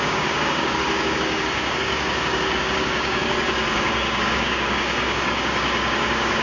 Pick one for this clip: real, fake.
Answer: fake